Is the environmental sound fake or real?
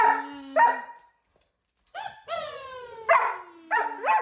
real